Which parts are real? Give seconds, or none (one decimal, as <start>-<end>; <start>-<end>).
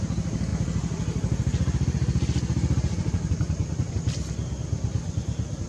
0.0-5.7